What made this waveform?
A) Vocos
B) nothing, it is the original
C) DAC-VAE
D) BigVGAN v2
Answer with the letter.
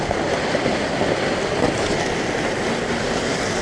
B